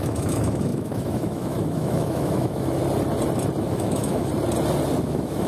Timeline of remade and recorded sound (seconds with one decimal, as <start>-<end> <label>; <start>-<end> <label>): 0.0-2.8 remade; 2.8-3.6 recorded; 3.6-4.3 remade; 4.3-5.0 recorded; 5.0-5.5 remade